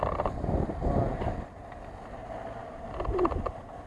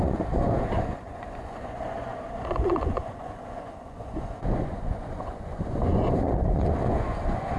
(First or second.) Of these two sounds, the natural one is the first